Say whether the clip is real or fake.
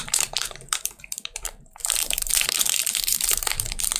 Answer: fake